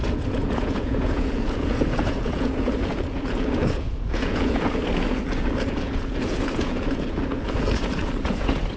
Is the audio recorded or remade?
remade